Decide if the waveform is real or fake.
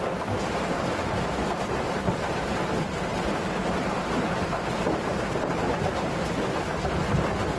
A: real